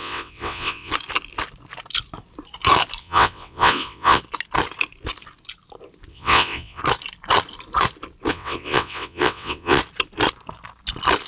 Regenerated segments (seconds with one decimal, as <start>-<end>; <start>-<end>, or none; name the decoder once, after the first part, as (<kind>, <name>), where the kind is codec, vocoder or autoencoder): 0.0-0.9 (vocoder, WaveNeXt); 3.0-4.2; 6.1-6.8; 8.3-9.8